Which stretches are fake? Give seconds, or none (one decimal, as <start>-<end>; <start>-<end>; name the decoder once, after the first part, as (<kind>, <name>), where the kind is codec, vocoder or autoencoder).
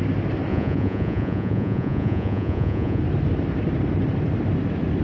0.5-3.0 (vocoder, Vocos)